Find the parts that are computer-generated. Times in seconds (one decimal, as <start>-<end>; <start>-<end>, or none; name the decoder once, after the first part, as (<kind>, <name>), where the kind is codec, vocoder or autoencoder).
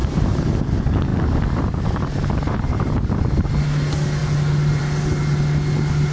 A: 0.0-0.6 (vocoder, BigVGAN v2); 1.1-3.5